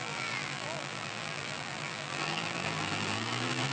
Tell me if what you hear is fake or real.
fake